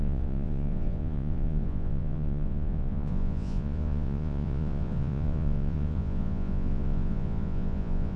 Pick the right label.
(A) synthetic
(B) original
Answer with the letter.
A